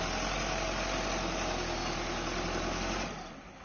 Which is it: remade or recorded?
recorded